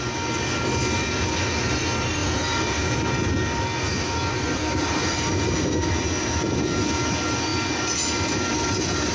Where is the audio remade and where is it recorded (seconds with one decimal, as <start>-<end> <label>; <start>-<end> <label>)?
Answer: 0.0-9.1 recorded